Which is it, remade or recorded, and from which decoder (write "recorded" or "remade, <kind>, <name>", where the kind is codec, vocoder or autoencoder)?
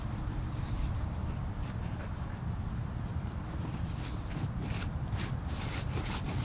remade, vocoder, BigVGAN v2